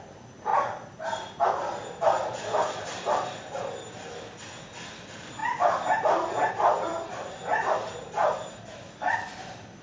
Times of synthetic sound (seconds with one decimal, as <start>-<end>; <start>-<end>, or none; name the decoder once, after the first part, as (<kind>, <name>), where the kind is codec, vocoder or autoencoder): none